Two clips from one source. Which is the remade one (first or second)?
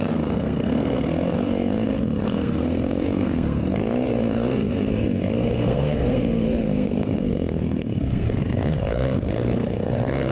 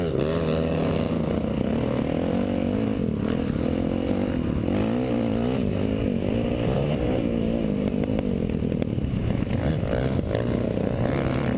first